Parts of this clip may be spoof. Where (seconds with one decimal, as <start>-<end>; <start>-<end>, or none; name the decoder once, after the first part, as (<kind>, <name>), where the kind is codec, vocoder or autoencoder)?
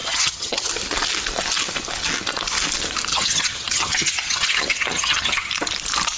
0.0-0.7 (vocoder, HiFi-GAN); 3.1-5.5